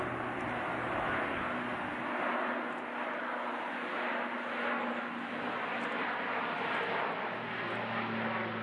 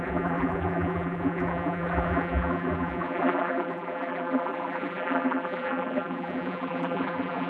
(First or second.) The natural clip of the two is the first